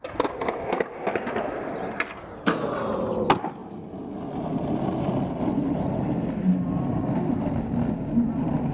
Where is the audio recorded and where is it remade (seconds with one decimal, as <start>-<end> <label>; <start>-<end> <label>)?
0.0-8.7 recorded